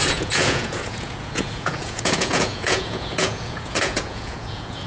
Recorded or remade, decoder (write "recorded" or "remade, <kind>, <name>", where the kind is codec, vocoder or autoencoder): remade, vocoder, Vocos